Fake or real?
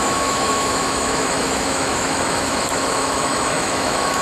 fake